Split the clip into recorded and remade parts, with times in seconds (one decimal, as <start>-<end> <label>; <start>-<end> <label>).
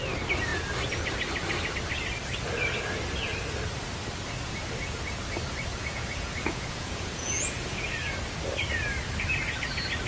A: 0.0-5.7 recorded; 5.7-7.9 remade; 7.9-10.1 recorded